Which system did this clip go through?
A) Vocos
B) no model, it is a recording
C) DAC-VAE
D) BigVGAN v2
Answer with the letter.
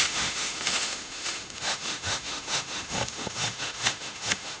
C